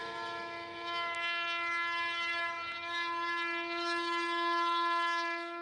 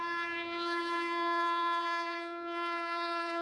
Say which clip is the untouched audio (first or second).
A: first